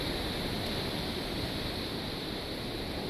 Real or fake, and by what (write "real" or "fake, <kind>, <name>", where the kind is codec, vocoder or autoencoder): real